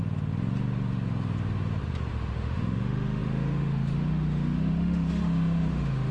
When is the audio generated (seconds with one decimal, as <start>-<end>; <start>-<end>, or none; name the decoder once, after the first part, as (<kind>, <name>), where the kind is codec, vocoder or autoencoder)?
2.1-6.1 (autoencoder, DAC-VAE)